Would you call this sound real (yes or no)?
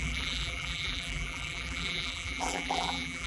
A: no